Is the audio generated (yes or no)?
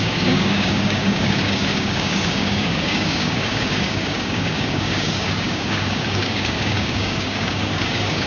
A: yes